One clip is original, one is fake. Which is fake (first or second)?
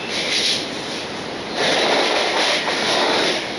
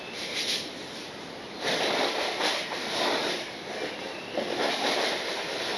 second